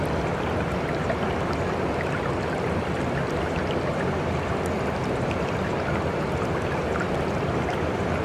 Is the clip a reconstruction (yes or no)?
no